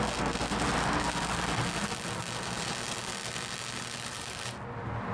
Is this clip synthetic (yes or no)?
no